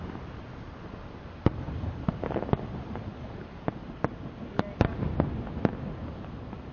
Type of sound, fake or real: real